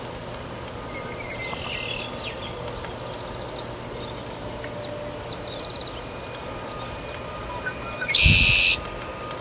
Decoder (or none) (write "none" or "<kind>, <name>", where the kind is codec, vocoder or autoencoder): none